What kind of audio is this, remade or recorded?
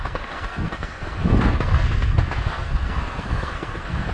remade